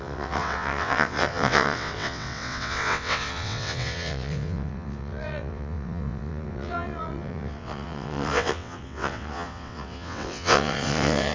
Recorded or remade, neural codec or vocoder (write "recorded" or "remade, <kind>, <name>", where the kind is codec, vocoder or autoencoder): remade, vocoder, WaveNeXt